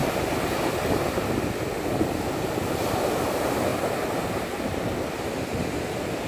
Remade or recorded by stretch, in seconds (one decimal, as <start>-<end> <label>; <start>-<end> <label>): 0.0-6.3 recorded